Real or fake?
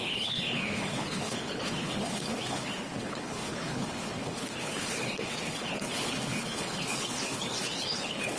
fake